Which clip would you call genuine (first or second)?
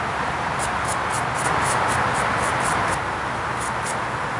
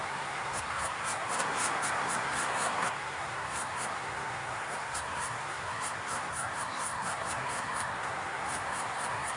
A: first